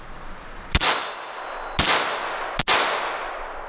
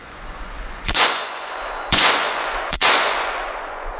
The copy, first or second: second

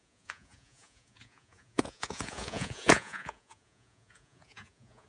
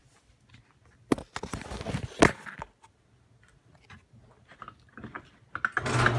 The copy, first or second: first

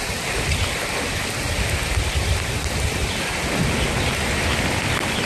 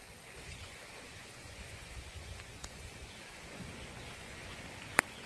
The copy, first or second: second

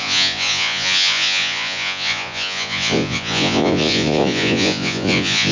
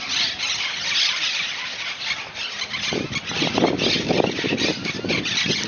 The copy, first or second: first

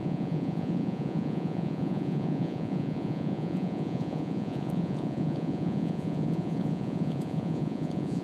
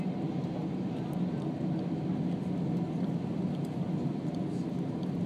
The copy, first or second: first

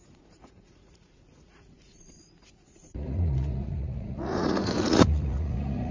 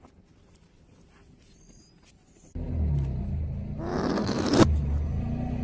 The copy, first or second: first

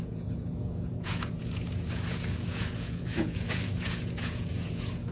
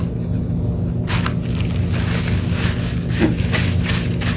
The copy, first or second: first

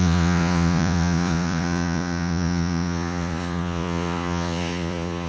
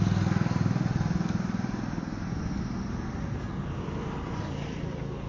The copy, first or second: first